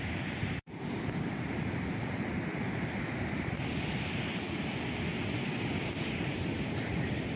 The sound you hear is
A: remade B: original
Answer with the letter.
B